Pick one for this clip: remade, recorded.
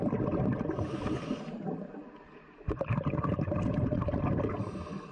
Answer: recorded